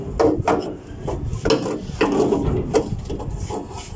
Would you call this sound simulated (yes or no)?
no